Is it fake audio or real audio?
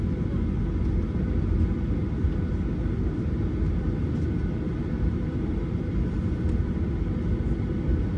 real